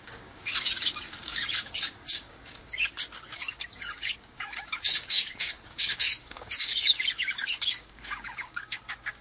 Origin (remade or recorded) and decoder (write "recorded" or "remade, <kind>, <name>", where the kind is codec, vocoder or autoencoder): remade, codec, DAC